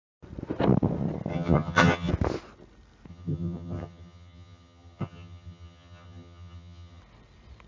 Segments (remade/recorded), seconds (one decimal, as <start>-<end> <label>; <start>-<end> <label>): 0.0-1.3 recorded; 1.3-2.1 remade; 2.1-3.1 recorded; 3.1-7.0 remade; 7.0-7.7 recorded